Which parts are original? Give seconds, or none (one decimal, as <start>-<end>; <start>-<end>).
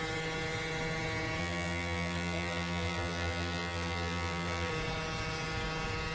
0.0-1.4; 4.7-6.1